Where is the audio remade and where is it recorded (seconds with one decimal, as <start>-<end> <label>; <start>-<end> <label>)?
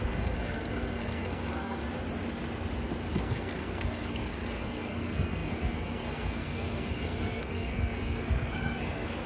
0.0-1.8 remade; 1.8-3.1 recorded; 3.1-9.3 remade